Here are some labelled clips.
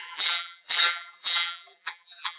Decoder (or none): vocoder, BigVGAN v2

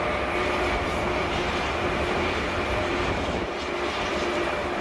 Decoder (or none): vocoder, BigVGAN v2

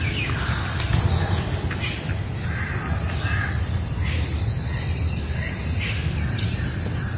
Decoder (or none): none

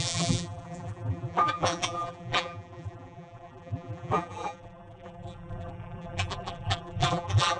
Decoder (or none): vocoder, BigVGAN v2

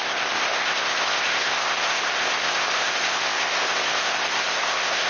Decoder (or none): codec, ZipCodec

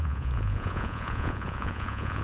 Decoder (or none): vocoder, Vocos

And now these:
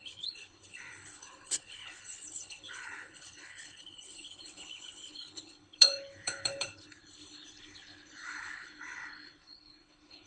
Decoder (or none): codec, HILCodec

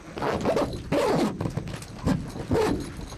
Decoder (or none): none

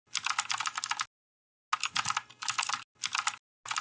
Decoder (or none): none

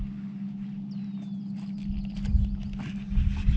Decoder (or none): none